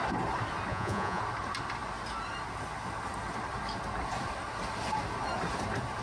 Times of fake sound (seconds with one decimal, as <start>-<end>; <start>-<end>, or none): 0.7-1.2